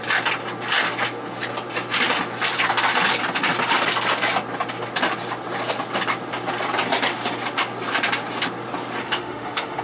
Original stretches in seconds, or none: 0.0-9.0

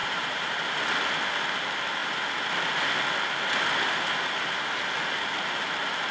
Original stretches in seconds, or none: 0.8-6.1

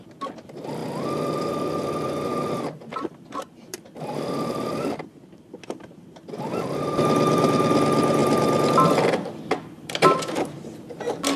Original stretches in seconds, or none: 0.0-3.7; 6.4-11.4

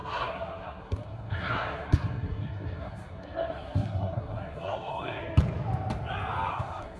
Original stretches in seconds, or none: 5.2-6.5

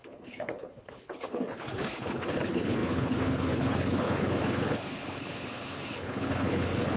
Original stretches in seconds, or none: none

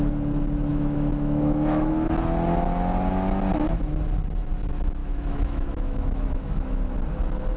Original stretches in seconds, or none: 0.0-0.7; 1.9-3.5; 4.0-5.0; 6.8-7.6